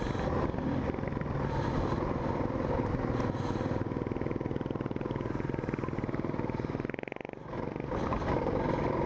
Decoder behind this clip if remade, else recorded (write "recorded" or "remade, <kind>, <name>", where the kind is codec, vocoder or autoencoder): recorded